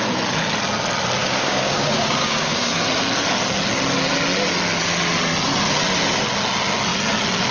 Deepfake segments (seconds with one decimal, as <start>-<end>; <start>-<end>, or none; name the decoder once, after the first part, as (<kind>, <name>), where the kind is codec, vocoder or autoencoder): 1.2-2.7 (codec, DAC)